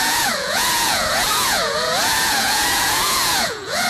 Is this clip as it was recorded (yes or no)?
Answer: no